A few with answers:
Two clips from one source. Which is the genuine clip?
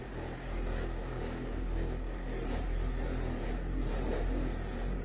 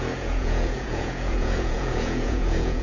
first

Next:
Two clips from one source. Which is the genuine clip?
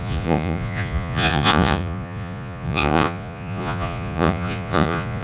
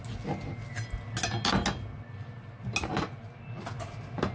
second